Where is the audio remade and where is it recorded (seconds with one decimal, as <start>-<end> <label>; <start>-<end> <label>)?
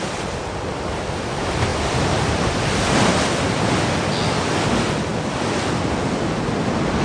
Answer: 0.0-7.0 recorded